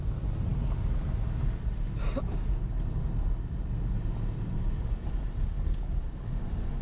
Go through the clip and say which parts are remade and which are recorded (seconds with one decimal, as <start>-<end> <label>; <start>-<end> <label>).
0.0-6.8 recorded